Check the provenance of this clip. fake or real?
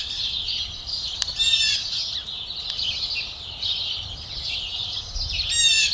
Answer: real